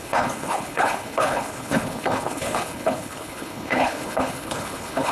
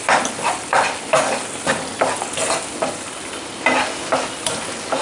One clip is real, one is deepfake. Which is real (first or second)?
second